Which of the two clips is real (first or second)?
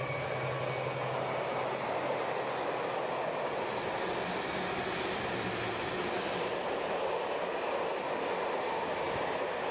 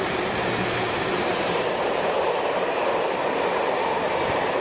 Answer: first